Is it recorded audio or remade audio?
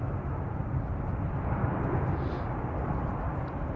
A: recorded